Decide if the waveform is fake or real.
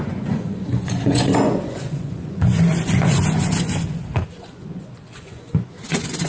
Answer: fake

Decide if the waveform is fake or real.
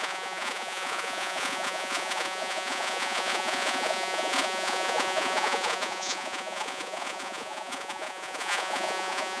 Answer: fake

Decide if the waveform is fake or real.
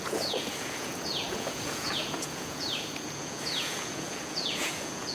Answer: fake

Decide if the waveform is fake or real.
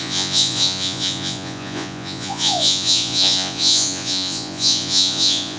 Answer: fake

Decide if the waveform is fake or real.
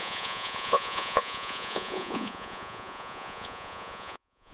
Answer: fake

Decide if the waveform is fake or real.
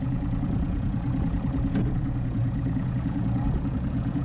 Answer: fake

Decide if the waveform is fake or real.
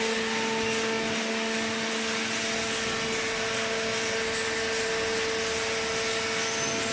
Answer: real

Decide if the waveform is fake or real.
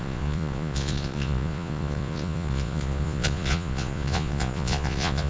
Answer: fake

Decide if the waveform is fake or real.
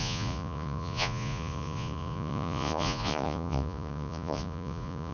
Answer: fake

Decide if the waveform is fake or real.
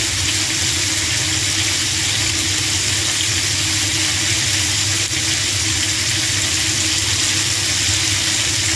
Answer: real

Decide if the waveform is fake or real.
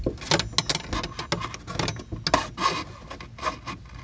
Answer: real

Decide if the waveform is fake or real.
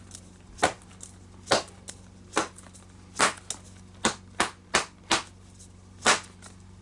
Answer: real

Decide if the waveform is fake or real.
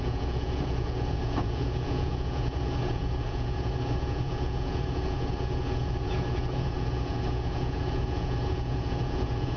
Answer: fake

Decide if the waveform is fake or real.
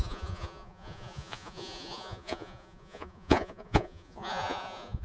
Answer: fake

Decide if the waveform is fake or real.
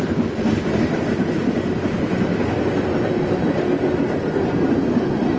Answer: real